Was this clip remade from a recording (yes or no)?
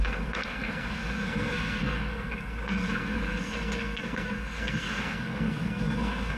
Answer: yes